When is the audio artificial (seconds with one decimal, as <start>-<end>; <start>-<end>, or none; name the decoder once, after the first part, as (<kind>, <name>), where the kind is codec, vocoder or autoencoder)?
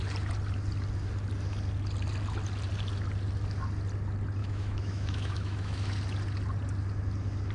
4.4-5.9 (autoencoder, DAC-VAE)